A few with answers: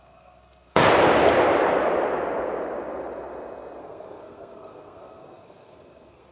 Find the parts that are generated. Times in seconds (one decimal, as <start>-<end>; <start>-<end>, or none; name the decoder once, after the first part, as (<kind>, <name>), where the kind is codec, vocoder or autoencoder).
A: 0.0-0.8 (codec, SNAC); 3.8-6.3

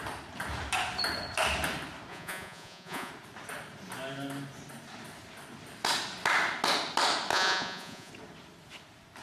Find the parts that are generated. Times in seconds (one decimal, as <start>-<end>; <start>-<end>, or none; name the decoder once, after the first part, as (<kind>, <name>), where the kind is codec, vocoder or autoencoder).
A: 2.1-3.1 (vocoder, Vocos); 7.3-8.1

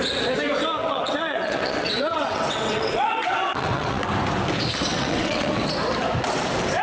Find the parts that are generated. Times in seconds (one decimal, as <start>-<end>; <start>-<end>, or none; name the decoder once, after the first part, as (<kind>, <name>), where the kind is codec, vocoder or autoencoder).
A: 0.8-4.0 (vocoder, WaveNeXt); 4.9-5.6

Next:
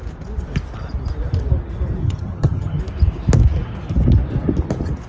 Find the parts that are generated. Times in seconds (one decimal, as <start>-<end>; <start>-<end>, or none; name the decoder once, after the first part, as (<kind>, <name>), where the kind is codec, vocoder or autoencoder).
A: 2.0-2.8 (vocoder, HiFi-GAN)

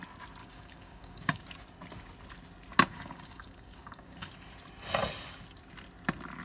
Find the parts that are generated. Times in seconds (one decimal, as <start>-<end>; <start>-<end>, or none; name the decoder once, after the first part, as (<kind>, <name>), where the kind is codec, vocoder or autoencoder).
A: 0.4-1.4 (codec, DAC); 2.9-4.3